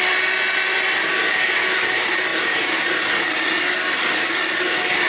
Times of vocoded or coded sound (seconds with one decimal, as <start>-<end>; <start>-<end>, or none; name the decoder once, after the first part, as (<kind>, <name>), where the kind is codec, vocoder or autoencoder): none